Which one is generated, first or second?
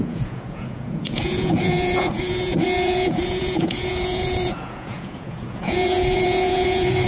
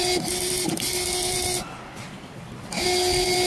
first